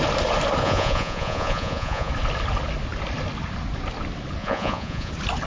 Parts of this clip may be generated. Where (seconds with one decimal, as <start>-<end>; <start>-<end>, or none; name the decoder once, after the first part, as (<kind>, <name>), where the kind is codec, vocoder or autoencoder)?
0.6-2.1 (vocoder, Vocos); 4.4-5.1